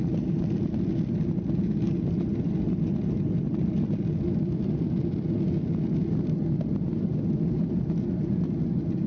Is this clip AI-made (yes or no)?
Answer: no